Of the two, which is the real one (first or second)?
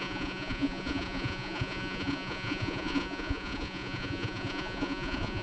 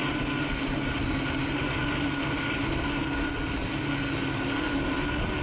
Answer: second